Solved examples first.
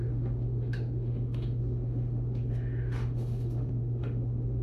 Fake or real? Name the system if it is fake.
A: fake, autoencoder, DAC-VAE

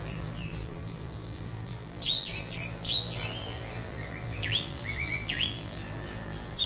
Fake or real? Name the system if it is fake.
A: fake, vocoder, BigVGAN v2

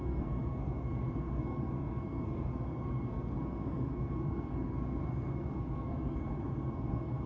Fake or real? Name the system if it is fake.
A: fake, codec, SNAC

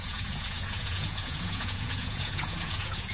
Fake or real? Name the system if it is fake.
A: fake, vocoder, Vocos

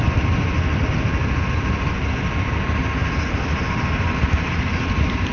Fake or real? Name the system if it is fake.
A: real